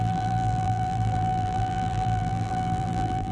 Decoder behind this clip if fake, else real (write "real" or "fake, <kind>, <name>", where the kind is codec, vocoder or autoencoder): fake, vocoder, BigVGAN v2